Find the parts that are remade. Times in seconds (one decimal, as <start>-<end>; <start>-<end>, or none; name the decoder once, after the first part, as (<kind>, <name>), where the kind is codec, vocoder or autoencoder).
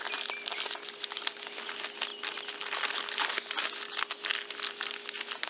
none